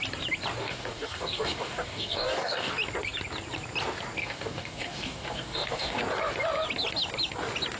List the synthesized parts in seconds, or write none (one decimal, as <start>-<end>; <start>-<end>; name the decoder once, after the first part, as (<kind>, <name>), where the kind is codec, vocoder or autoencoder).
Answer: 0.6-2.7 (codec, DAC); 4.2-6.0